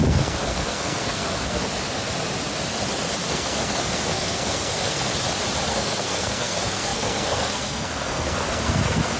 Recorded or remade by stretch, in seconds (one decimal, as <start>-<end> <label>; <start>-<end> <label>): 0.0-1.6 remade; 1.6-3.3 recorded; 3.3-5.1 remade; 5.1-5.7 recorded; 5.7-9.2 remade